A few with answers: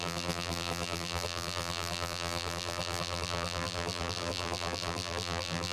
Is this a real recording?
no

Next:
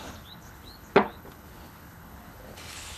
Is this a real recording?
no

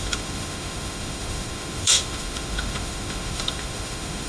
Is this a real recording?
no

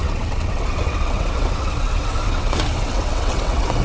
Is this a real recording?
no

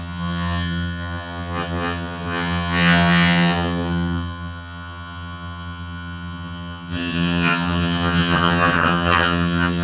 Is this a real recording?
no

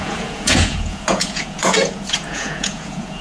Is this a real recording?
no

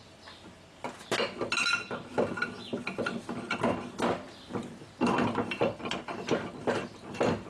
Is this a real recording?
yes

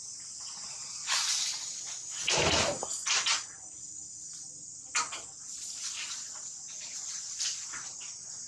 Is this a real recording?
yes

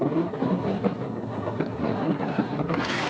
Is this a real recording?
no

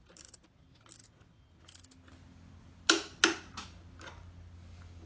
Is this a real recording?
yes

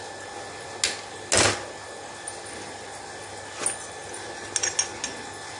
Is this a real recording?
yes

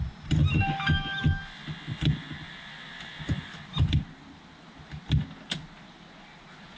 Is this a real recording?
yes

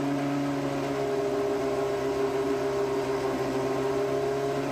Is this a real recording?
yes